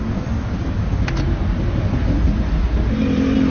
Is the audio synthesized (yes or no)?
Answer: no